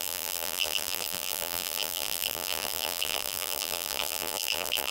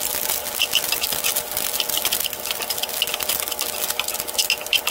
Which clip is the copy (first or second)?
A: first